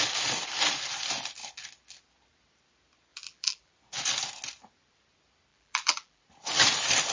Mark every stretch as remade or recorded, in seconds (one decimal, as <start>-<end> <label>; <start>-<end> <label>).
0.0-3.1 recorded; 3.1-3.7 remade; 3.7-5.5 recorded; 5.5-6.2 remade; 6.2-7.1 recorded